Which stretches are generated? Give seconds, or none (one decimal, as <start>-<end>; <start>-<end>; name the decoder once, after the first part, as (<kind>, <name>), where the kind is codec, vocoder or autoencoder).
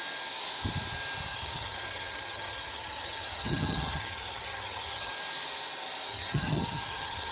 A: 1.3-5.1 (vocoder, HiFi-GAN); 6.1-7.3